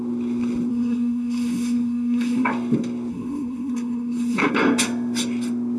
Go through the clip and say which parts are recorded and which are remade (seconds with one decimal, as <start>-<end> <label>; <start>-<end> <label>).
0.0-0.7 recorded; 0.7-2.5 remade; 2.5-3.1 recorded; 3.1-4.5 remade; 4.5-5.8 recorded